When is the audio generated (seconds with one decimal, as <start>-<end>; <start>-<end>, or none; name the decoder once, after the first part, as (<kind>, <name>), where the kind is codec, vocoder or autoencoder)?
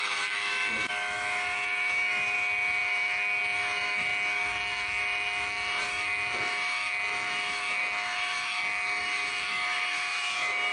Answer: 0.0-10.7 (autoencoder, DAC-VAE)